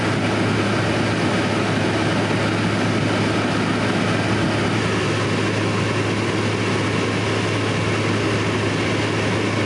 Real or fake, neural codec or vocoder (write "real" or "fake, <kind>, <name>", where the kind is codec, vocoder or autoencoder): real